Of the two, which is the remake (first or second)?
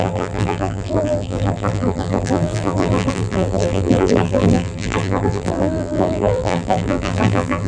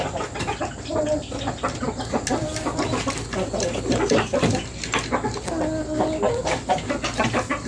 first